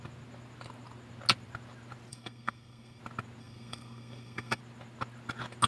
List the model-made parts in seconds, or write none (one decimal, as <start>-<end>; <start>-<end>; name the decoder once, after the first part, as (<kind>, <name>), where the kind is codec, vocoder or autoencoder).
2.1-3.0 (codec, SNAC); 3.4-4.6